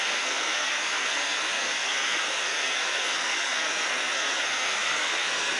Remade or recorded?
remade